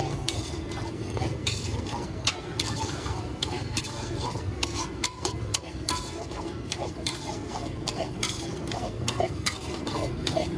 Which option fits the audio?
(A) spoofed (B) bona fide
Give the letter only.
A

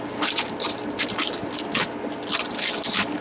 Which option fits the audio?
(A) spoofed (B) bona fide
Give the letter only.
B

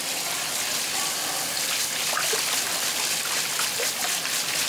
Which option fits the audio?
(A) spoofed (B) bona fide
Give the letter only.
B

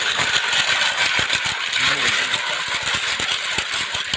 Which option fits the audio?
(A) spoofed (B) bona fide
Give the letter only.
B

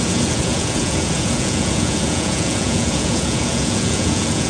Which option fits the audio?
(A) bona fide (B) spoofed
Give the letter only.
B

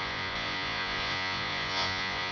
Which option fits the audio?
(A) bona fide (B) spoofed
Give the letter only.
B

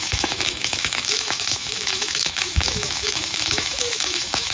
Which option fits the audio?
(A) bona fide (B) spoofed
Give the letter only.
B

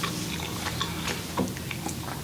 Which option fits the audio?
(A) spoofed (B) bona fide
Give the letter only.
B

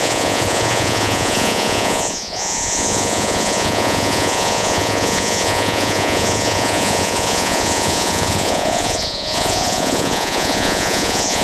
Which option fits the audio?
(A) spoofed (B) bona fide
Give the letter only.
A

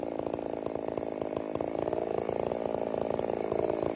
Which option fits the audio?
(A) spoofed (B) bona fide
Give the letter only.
B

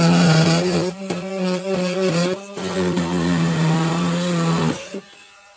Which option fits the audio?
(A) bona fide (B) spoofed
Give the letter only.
B